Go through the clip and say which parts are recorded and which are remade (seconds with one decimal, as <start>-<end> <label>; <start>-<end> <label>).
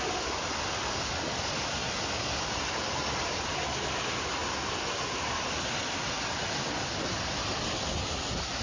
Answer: 0.0-8.6 recorded